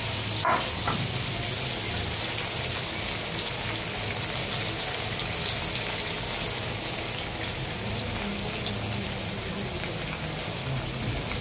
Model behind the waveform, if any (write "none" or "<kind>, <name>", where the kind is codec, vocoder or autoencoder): none